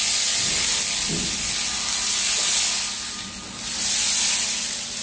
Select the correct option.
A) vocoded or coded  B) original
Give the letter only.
B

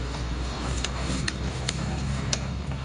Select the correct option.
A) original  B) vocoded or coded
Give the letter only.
B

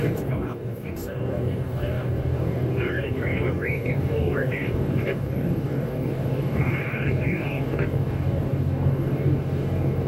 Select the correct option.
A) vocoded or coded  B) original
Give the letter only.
A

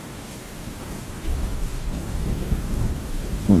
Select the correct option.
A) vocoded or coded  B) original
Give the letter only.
A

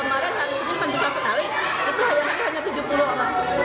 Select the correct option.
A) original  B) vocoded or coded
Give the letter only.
A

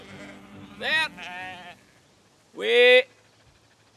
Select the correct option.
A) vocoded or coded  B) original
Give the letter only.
B